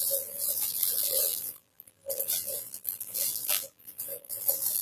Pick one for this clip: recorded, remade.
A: remade